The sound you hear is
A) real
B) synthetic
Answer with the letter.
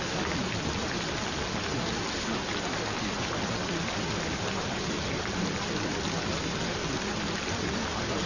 A